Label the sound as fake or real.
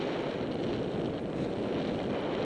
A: real